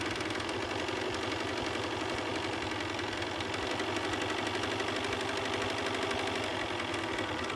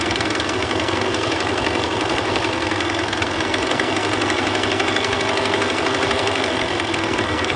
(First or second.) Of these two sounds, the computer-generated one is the second